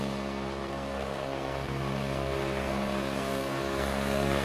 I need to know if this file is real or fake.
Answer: fake